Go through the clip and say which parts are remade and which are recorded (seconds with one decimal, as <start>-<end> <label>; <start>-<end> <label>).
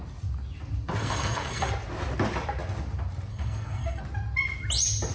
0.0-1.0 recorded; 1.0-1.7 remade; 1.7-3.3 recorded; 3.3-4.0 remade; 4.0-5.1 recorded